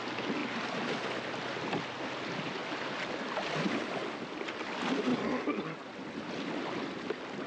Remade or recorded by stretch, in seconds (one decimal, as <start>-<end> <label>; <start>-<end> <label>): 0.0-7.5 recorded